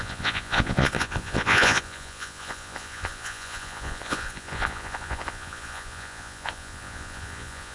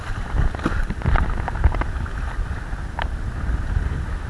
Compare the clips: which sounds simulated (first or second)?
first